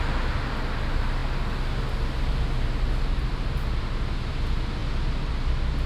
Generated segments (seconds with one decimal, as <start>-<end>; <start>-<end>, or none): none